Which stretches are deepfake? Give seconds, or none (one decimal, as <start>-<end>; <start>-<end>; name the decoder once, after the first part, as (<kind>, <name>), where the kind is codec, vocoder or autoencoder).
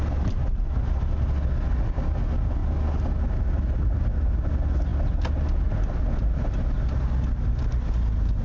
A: none